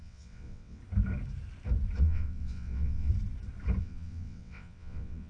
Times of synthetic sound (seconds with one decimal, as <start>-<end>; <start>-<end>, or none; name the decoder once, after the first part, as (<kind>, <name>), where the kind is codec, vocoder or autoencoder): 0.0-0.8 (vocoder, WaveNeXt); 2.0-3.1; 3.8-5.3